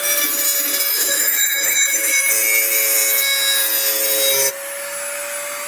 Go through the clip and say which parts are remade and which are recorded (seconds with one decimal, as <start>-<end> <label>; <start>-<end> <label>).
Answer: 0.0-0.9 recorded; 0.9-2.3 remade; 2.3-5.7 recorded